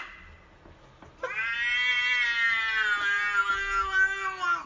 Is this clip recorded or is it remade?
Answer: recorded